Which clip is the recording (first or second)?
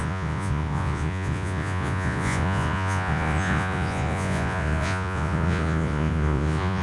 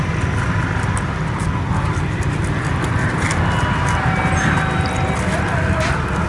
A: second